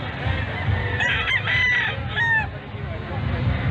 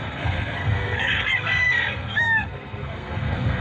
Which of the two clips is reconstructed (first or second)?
second